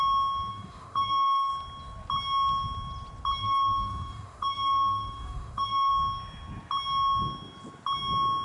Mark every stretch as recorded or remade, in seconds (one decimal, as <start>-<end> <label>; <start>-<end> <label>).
0.0-0.5 recorded; 0.5-1.5 remade; 1.5-3.4 recorded; 3.4-5.9 remade; 5.9-8.4 recorded